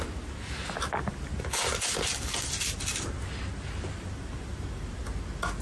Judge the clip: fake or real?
real